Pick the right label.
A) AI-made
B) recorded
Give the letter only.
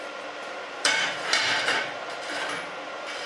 A